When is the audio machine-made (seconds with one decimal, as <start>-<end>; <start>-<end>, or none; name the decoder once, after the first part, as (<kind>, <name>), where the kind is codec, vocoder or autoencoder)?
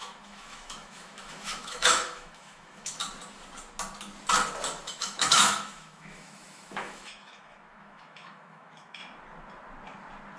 0.0-3.0 (autoencoder, DAC-VAE); 4.9-9.0